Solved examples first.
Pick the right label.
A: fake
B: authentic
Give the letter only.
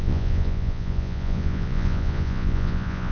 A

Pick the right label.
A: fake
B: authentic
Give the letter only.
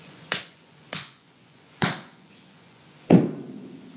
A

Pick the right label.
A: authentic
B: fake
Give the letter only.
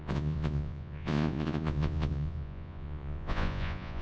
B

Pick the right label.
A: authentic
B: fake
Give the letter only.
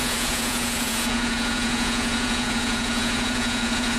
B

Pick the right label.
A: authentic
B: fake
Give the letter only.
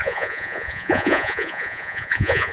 B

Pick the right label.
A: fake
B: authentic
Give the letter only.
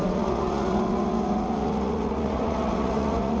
A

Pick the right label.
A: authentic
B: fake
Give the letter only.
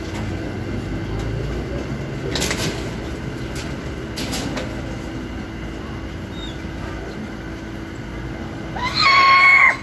A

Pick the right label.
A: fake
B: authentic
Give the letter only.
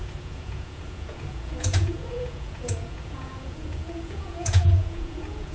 A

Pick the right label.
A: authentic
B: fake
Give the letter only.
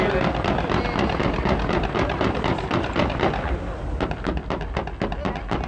A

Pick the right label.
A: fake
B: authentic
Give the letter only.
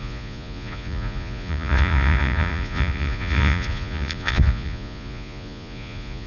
A